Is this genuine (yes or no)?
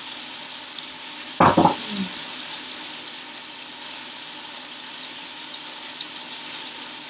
yes